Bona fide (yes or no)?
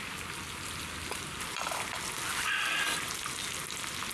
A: yes